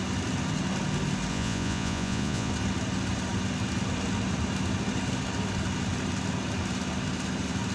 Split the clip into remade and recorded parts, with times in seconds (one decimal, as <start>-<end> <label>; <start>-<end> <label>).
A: 0.0-1.3 recorded; 1.3-2.5 remade; 2.5-7.7 recorded